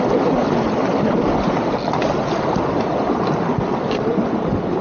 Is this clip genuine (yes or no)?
yes